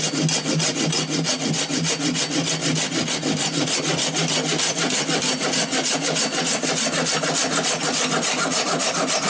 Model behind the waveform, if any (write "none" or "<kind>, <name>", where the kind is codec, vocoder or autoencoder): none